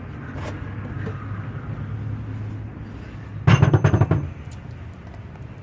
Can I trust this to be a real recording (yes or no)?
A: yes